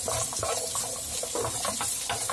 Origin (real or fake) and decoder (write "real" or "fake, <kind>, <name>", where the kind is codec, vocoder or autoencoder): real